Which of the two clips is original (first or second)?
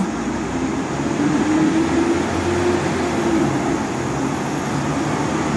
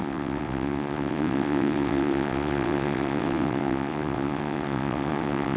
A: first